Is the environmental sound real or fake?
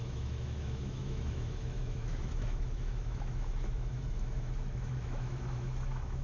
fake